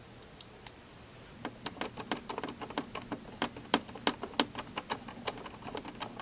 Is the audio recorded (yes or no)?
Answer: yes